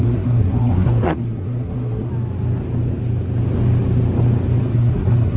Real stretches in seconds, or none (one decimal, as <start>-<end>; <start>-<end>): 2.1-4.6